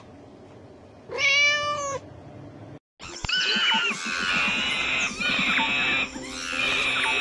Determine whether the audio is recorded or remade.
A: recorded